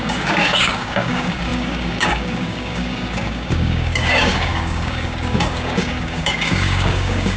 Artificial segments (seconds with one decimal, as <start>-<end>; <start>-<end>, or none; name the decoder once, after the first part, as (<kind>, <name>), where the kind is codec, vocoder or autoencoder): 0.0-7.4 (codec, DAC)